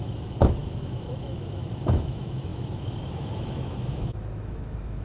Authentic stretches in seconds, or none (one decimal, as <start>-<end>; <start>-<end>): none